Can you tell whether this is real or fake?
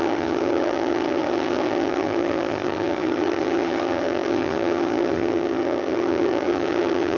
fake